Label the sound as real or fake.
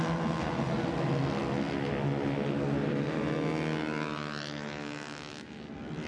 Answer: real